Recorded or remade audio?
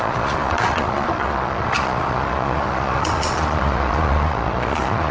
remade